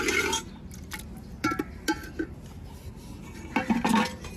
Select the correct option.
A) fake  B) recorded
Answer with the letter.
B